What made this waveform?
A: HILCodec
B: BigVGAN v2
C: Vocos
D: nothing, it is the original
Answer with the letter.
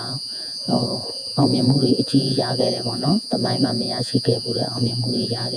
C